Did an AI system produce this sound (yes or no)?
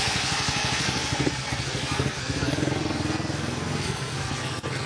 yes